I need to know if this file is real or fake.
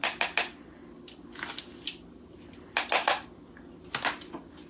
real